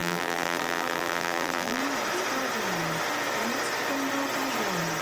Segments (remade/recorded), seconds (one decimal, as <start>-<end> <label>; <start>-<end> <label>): 0.0-1.8 remade; 1.8-5.0 recorded